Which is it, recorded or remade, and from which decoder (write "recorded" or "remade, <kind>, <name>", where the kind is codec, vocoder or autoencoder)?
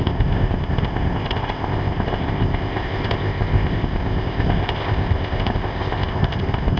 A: remade, codec, ZipCodec